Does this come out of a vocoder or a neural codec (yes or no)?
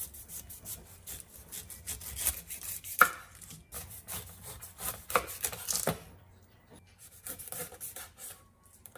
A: no